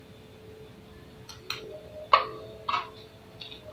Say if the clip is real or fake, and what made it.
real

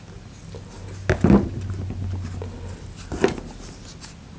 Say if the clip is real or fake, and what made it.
real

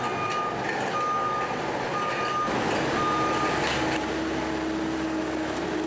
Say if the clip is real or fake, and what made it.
real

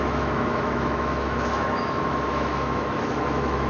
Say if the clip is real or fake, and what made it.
fake, autoencoder, DAC-VAE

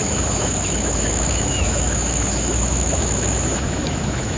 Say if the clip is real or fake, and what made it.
fake, autoencoder, DAC-VAE